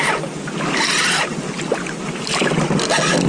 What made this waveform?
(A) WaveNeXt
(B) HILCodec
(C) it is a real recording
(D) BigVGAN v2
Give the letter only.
C